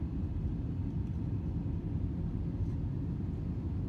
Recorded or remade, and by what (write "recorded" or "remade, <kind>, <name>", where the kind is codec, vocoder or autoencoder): recorded